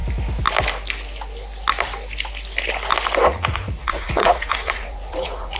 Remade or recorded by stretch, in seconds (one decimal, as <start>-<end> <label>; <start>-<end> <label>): 0.0-3.3 recorded; 3.3-5.6 remade